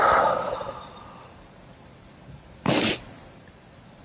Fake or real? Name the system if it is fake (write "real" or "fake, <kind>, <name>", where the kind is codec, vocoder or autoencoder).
fake, vocoder, BigVGAN v2